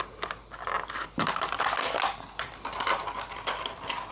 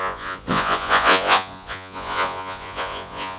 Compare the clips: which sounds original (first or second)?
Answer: first